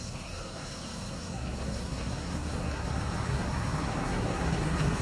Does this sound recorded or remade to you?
remade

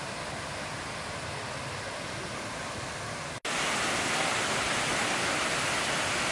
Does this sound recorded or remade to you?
recorded